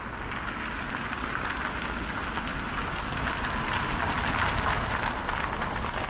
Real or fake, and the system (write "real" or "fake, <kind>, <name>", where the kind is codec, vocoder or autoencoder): real